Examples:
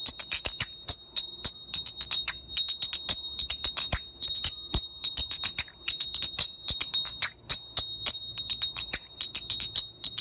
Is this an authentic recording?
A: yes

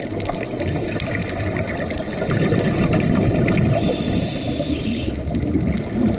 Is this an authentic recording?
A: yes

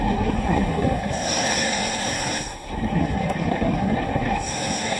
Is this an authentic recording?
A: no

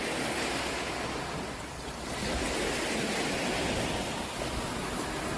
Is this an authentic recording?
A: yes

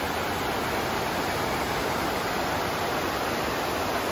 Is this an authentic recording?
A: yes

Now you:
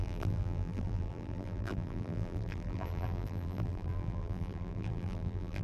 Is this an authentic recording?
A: no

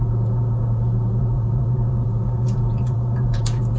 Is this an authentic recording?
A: no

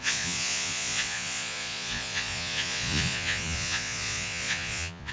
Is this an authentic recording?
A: no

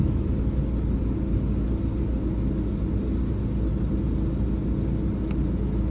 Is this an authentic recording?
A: yes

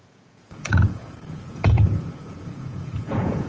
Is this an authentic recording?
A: no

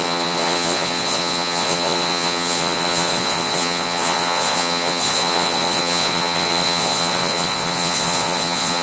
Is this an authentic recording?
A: no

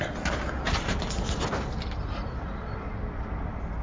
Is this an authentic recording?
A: yes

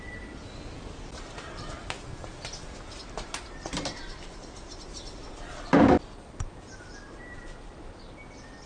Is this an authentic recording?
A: yes